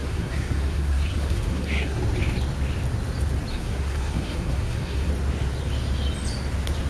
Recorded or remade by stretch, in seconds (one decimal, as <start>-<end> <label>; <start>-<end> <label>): 0.0-2.0 remade; 2.0-3.5 recorded; 3.5-5.1 remade; 5.1-6.9 recorded